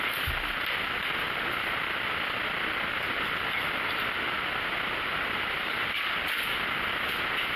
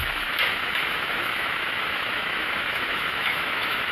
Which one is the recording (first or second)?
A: first